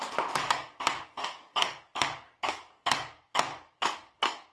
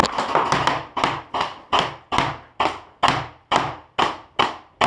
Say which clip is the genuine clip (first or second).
second